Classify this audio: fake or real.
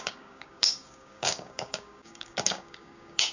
fake